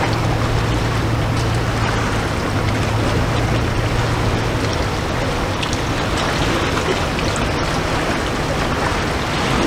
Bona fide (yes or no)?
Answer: yes